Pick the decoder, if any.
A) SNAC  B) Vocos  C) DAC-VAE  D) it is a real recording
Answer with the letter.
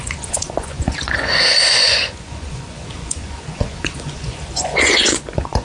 B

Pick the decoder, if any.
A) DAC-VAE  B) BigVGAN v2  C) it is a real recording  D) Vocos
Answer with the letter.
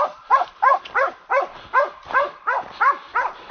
C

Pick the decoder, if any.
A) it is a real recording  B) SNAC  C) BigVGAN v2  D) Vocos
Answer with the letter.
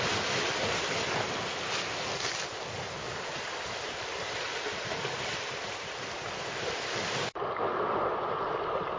A